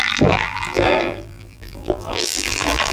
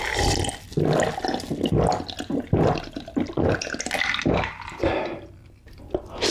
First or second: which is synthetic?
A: first